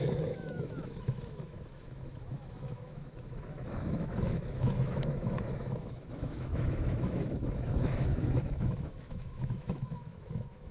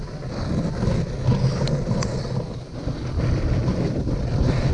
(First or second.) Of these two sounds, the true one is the second